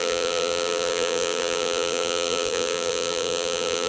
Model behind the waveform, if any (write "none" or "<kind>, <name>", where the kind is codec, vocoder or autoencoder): vocoder, BigVGAN v2